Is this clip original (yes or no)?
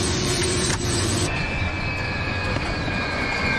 no